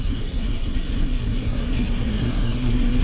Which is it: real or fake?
fake